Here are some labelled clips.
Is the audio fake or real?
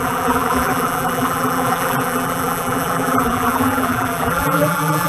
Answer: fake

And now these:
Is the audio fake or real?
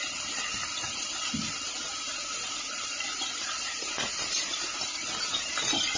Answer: real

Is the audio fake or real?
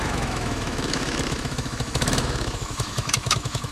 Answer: fake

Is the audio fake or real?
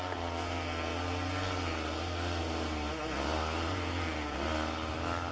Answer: real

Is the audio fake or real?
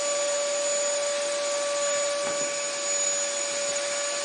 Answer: real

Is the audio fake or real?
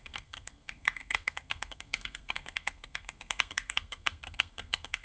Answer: fake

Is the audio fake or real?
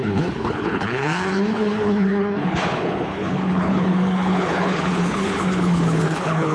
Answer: fake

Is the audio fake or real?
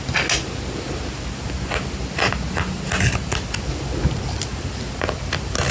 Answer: real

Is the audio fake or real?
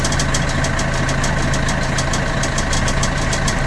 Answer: real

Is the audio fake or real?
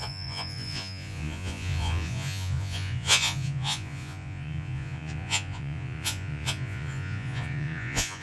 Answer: fake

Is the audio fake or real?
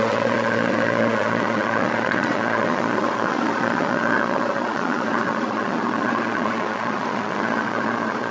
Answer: fake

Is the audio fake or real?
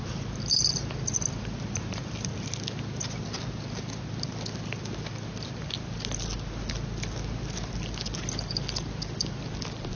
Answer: real